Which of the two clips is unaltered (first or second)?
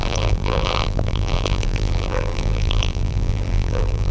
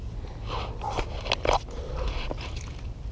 second